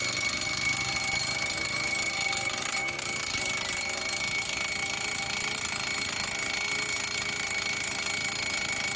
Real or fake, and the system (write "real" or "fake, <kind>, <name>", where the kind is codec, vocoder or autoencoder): real